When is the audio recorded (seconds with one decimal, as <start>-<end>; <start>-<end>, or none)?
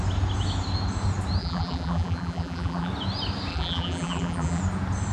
0.0-1.4; 2.9-3.5; 4.6-5.1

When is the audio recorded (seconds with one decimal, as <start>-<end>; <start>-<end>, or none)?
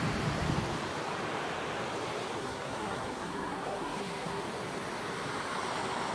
0.0-2.4; 4.4-6.1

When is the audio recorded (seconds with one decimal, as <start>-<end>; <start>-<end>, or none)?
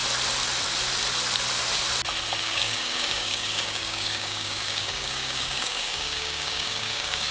0.0-2.4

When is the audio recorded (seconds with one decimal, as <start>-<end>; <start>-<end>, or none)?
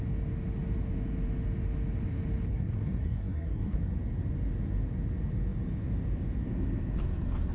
0.0-2.5; 3.8-7.5